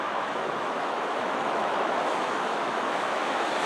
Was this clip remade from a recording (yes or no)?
yes